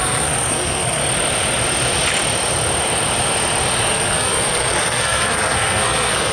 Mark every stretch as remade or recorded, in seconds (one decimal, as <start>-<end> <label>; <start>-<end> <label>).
0.0-1.0 remade; 1.0-3.9 recorded; 3.9-6.3 remade